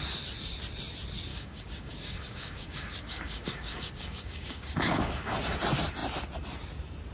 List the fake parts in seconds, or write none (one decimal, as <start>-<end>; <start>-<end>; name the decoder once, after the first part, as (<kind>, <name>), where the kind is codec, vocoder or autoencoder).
1.3-5.4 (codec, DAC)